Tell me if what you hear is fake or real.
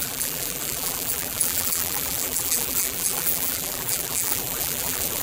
fake